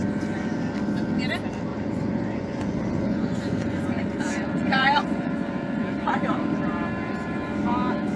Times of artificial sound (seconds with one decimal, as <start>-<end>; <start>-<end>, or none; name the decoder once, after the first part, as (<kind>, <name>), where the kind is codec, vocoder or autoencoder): 1.7-6.1 (vocoder, Vocos)